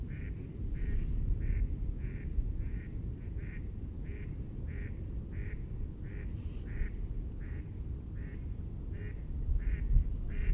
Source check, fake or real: real